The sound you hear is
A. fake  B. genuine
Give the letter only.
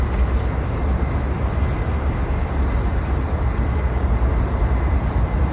B